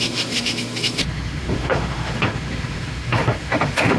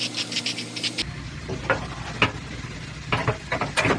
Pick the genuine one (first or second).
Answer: second